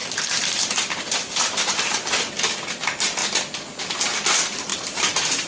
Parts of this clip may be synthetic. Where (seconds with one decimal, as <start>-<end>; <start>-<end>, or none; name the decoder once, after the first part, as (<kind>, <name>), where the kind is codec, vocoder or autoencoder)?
0.0-2.1 (vocoder, BigVGAN v2); 4.7-5.5